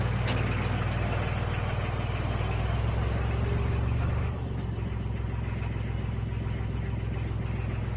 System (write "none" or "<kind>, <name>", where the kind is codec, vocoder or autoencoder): none